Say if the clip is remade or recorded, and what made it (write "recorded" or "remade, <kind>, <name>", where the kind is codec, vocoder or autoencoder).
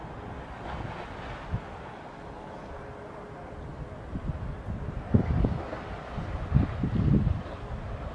recorded